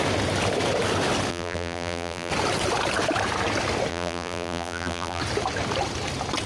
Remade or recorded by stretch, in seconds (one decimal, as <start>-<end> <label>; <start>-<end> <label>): 0.0-1.3 recorded; 1.3-2.3 remade; 2.3-3.9 recorded; 3.9-5.2 remade; 5.2-6.5 recorded